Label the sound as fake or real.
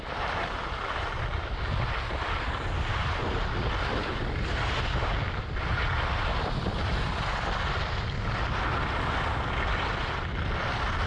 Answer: real